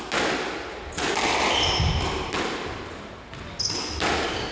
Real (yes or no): yes